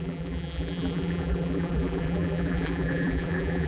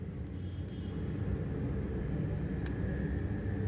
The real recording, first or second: second